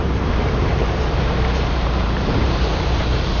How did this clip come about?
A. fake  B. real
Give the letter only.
A